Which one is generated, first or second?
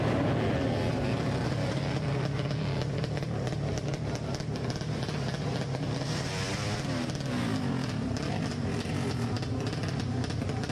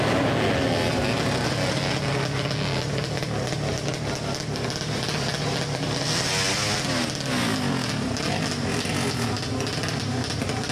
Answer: first